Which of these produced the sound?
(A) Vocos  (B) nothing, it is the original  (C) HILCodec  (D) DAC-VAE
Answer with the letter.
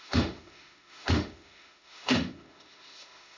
D